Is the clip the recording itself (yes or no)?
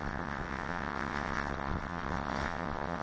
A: no